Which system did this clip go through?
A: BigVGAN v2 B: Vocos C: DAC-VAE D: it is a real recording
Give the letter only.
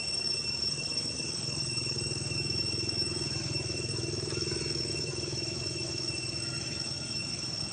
C